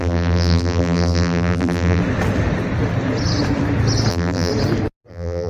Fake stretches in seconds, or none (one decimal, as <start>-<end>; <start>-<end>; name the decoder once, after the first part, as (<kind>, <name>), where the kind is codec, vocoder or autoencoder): 0.0-2.0 (vocoder, BigVGAN v2); 4.1-4.5; 5.1-5.5